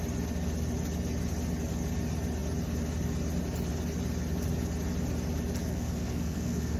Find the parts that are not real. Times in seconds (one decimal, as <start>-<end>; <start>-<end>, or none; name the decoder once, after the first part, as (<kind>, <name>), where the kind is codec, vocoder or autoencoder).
5.6-6.8 (codec, SNAC)